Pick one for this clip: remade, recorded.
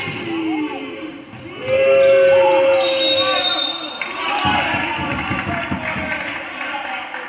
recorded